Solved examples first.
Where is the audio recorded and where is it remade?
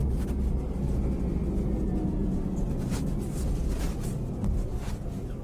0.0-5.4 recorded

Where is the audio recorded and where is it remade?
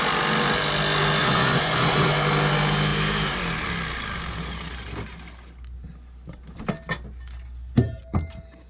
0.0-1.2 recorded; 1.2-2.1 remade; 2.1-8.7 recorded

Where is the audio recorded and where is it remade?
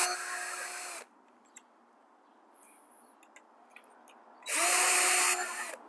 0.0-5.9 recorded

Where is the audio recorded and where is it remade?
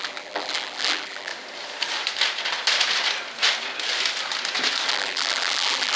0.0-1.3 remade; 1.3-4.9 recorded; 4.9-6.0 remade